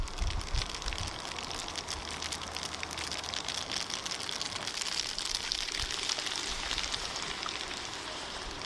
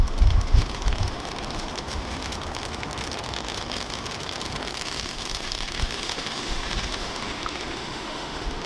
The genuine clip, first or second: first